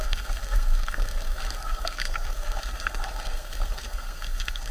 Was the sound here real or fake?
fake